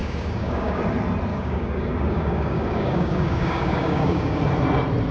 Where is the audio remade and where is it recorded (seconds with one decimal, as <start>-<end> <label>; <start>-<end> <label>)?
0.0-0.8 remade; 0.8-1.3 recorded; 1.3-4.4 remade; 4.4-5.1 recorded